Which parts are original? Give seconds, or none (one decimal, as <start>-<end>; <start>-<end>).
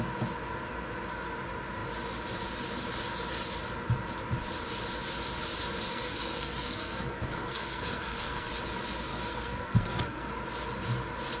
0.0-5.9; 8.5-9.1; 10.3-11.4